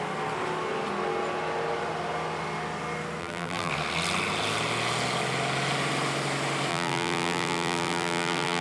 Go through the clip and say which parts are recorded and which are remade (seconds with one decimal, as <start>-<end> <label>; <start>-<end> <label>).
0.0-3.2 recorded; 3.2-3.7 remade; 3.7-6.7 recorded; 6.7-8.6 remade

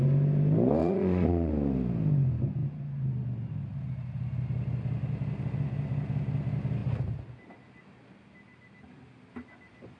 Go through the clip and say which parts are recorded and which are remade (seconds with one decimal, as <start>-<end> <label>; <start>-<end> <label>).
0.0-0.8 recorded; 0.8-1.5 remade; 1.5-10.0 recorded

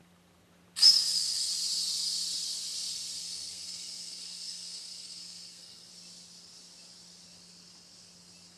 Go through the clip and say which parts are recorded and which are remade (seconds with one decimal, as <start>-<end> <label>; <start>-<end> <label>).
0.0-0.9 recorded; 0.9-1.5 remade; 1.5-3.2 recorded; 3.2-5.9 remade; 5.9-8.6 recorded

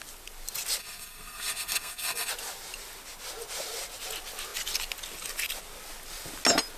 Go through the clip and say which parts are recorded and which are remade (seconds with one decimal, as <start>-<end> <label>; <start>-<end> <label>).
0.0-0.8 recorded; 0.8-2.3 remade; 2.3-6.8 recorded

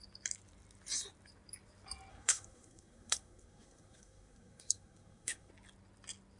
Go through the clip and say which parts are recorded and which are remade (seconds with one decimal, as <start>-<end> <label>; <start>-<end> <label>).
0.0-2.1 recorded; 2.1-5.5 remade; 5.5-6.4 recorded